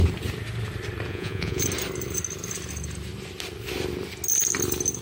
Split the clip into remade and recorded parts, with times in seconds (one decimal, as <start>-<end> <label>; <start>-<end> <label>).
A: 0.0-1.1 recorded; 1.1-1.6 remade; 1.6-5.0 recorded